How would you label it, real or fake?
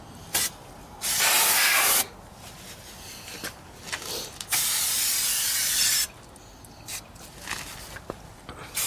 real